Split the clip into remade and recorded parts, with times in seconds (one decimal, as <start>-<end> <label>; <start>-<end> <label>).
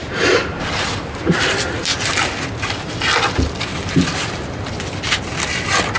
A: 0.0-1.9 remade; 1.9-3.3 recorded; 3.3-3.7 remade; 3.7-6.0 recorded